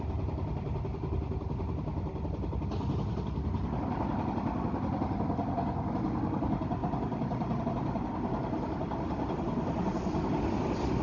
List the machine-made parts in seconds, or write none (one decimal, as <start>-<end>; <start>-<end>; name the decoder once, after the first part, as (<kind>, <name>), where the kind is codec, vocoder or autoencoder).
6.8-7.6 (vocoder, BigVGAN v2)

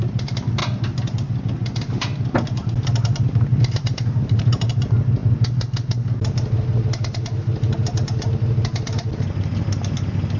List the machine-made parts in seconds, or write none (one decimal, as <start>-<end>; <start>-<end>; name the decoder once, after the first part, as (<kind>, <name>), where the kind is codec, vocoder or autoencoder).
3.5-4.7 (vocoder, BigVGAN v2)

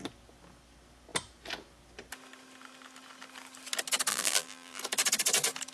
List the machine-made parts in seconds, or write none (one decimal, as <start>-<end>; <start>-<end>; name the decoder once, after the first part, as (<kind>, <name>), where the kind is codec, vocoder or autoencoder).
4.1-4.8 (vocoder, BigVGAN v2)

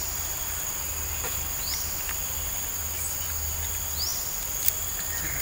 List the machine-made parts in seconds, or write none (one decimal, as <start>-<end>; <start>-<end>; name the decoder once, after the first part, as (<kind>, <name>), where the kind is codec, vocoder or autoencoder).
0.0-2.1 (vocoder, BigVGAN v2)